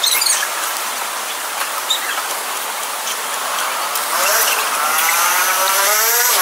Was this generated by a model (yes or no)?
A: no